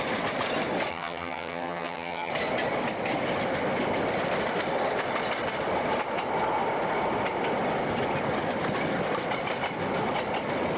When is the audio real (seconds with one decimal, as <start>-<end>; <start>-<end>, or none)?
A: 0.0-0.9; 2.3-10.8